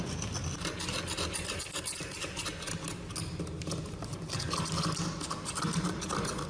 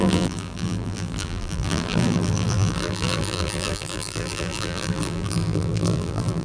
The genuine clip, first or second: first